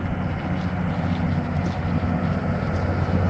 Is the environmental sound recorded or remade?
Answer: recorded